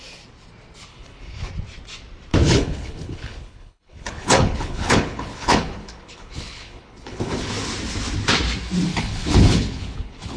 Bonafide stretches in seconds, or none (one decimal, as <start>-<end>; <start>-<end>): 0.0-0.9; 1.5-2.3; 7.5-8.9